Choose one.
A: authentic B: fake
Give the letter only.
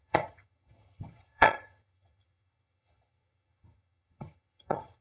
B